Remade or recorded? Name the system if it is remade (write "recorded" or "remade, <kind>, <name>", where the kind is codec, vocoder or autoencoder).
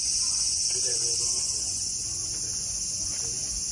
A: remade, vocoder, Vocos